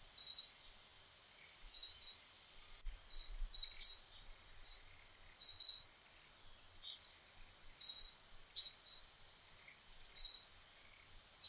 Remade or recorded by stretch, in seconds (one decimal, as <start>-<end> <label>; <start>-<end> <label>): 0.0-11.5 recorded

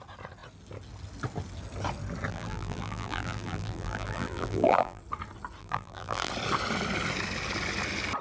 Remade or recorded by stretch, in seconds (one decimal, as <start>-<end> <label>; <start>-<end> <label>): 0.0-2.3 recorded; 2.3-5.0 remade; 5.0-5.6 recorded; 5.6-6.3 remade; 6.3-8.2 recorded